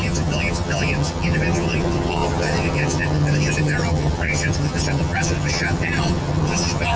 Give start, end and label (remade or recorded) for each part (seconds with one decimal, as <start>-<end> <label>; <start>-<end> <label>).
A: 0.0-7.0 remade